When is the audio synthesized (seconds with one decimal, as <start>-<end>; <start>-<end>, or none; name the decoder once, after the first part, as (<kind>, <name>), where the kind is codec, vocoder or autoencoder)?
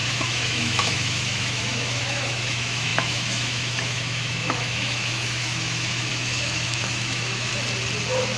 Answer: 0.0-7.5 (autoencoder, DAC-VAE)